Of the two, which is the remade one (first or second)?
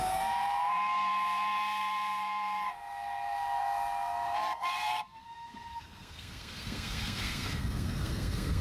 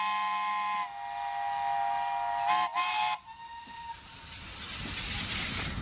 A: first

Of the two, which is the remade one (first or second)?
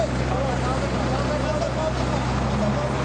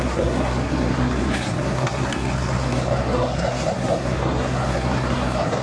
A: second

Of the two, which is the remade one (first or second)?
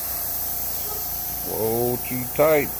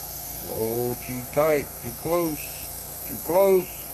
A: second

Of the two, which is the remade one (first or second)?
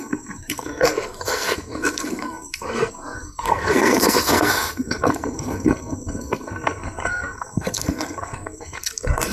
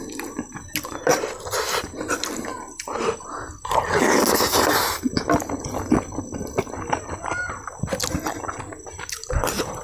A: first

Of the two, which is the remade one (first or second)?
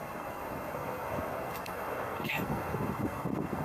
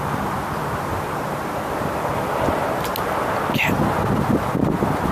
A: first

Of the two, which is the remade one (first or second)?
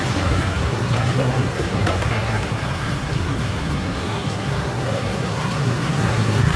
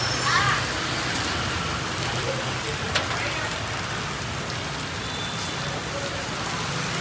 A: first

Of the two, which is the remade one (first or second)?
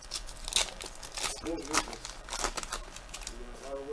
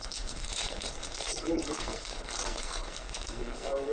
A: second